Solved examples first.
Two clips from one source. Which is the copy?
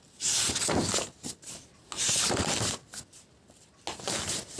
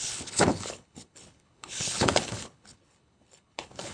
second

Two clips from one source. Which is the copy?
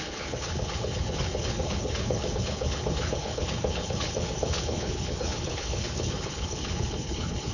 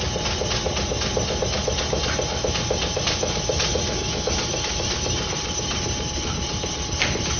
first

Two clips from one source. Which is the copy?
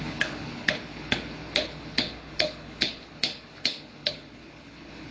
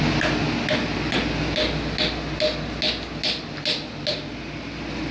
first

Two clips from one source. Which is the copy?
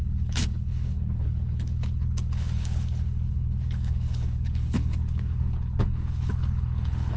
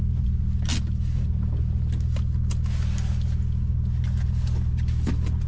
first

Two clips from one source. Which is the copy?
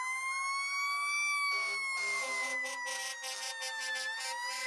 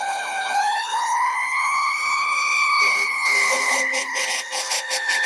second